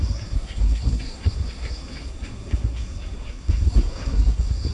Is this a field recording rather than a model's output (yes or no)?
no